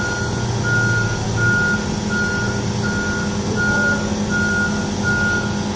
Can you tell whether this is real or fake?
real